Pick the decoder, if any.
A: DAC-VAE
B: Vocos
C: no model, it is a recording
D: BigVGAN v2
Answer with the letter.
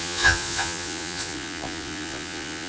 B